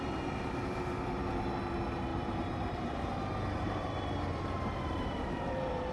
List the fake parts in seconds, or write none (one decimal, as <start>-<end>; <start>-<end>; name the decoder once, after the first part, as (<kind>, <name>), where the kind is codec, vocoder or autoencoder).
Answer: 2.1-5.9 (vocoder, BigVGAN v2)